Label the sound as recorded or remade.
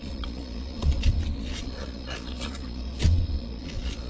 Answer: remade